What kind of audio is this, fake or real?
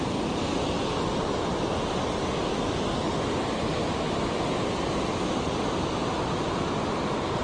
real